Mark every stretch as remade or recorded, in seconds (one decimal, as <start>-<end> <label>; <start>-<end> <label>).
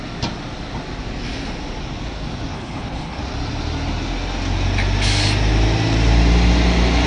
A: 0.0-2.5 recorded; 2.5-3.2 remade; 3.2-7.1 recorded